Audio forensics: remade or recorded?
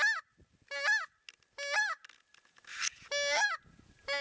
recorded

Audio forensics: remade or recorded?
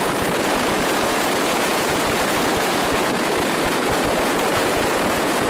remade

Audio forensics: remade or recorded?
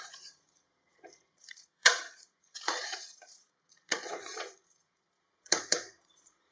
remade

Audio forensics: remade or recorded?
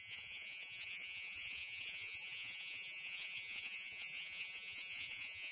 remade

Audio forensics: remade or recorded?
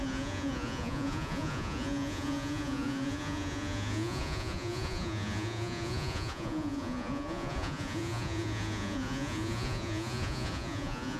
remade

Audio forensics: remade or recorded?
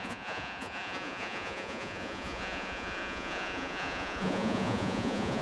remade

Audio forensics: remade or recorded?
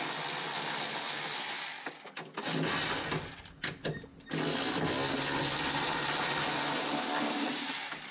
recorded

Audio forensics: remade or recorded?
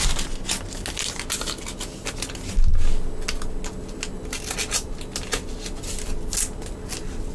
recorded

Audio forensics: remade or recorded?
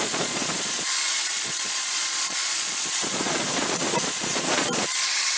remade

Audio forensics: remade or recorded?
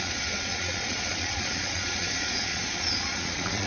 remade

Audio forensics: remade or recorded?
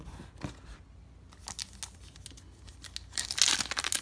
recorded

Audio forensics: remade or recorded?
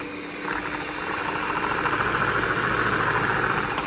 recorded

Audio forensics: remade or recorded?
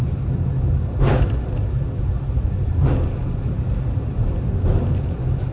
recorded